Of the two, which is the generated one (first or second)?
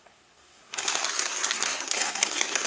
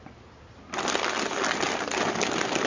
first